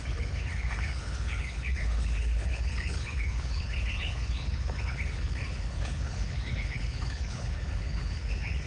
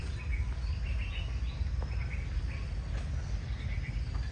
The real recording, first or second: second